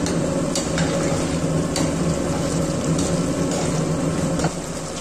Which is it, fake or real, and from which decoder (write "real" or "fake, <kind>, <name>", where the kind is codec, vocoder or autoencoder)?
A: real